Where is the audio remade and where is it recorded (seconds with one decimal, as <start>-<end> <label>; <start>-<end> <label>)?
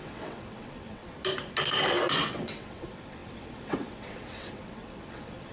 0.0-1.0 remade; 1.0-2.3 recorded; 2.3-5.5 remade